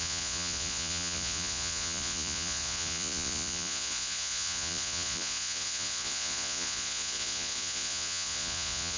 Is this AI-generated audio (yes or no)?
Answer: yes